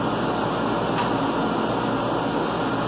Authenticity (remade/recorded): recorded